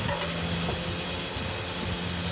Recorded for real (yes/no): yes